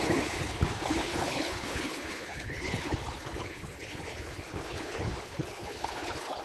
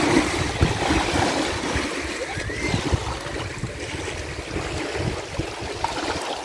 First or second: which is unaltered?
second